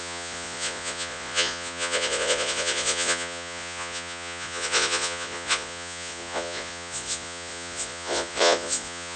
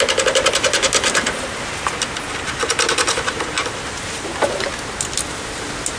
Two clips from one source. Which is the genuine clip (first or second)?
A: second